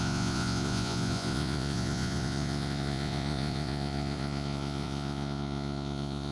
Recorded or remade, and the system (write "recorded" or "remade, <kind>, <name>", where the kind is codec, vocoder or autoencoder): remade, vocoder, Vocos